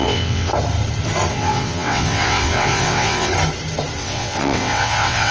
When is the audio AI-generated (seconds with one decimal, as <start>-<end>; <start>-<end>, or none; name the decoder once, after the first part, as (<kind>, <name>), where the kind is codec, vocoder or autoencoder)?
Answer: 0.0-0.5 (vocoder, WaveNeXt); 1.3-3.3; 4.0-5.3